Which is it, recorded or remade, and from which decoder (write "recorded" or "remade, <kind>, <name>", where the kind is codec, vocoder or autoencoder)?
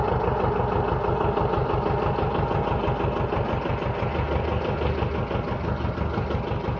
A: recorded